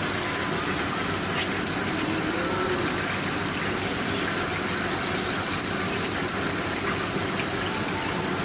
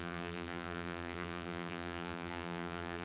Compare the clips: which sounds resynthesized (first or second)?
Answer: second